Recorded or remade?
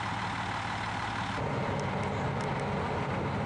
recorded